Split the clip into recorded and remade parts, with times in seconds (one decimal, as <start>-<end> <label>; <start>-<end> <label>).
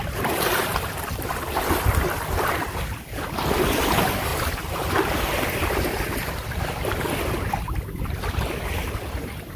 0.0-9.6 recorded